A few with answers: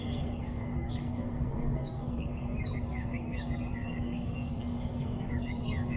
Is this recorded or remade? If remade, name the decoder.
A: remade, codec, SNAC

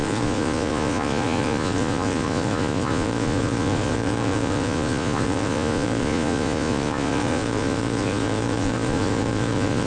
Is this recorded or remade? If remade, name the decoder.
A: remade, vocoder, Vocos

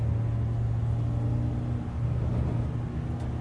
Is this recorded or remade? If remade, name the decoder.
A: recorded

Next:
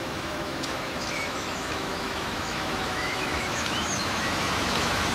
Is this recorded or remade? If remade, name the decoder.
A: remade, autoencoder, DAC-VAE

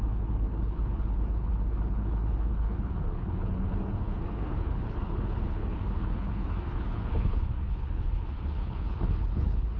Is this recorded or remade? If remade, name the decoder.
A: remade, codec, HILCodec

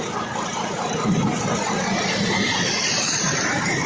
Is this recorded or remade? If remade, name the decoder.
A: recorded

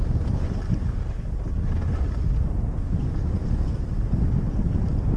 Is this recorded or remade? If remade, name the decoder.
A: recorded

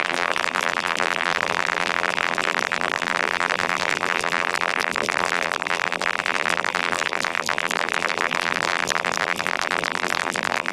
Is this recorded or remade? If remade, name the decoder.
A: remade, vocoder, BigVGAN v2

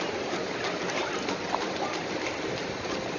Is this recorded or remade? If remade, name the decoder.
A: recorded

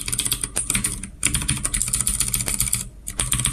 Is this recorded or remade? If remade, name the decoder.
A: recorded